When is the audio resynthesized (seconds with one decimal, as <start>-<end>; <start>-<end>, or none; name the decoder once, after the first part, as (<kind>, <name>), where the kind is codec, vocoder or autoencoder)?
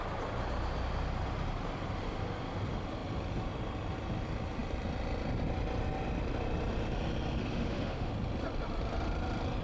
7.4-8.1 (autoencoder, DAC-VAE)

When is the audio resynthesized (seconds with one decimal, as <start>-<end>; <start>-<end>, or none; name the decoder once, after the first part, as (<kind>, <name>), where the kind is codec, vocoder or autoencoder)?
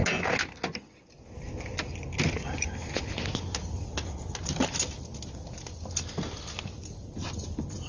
none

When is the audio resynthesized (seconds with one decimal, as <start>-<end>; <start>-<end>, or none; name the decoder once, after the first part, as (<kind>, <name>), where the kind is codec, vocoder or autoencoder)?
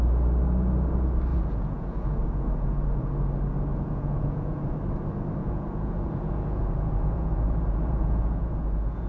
1.3-3.3 (vocoder, Vocos); 3.7-4.7; 5.4-9.1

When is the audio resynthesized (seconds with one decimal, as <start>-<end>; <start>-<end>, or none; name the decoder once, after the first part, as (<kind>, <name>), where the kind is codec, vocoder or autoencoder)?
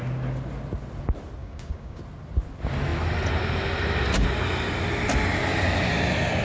1.4-2.0 (codec, DAC)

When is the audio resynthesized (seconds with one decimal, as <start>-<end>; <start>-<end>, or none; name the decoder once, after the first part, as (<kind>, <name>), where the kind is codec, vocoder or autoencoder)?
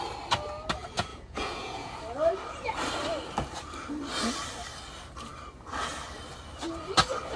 1.1-2.0 (vocoder, Vocos)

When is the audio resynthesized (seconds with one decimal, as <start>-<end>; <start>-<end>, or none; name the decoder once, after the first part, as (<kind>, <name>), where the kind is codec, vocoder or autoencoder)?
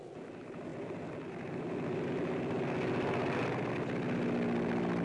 none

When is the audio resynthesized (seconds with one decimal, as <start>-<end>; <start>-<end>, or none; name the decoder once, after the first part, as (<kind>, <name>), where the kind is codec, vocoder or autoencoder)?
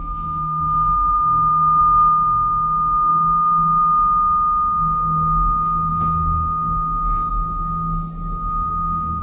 0.0-1.8 (codec, SNAC); 8.7-9.2